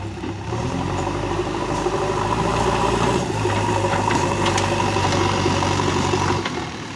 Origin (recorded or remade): remade